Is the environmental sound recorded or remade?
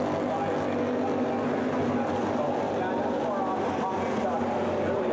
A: recorded